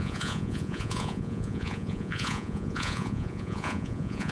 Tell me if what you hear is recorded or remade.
remade